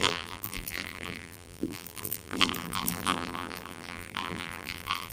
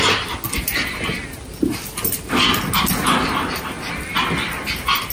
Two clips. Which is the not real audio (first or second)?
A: first